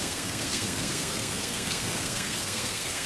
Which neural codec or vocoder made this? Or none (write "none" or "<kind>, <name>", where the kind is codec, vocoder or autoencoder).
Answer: codec, SNAC